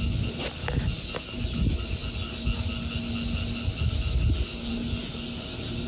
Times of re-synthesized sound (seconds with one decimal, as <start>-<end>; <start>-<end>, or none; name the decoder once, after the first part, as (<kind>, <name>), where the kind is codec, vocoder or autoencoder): none